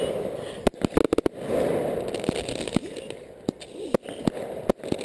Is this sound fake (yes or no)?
no